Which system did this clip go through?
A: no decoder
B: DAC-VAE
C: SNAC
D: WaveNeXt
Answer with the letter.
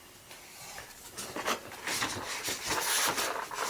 A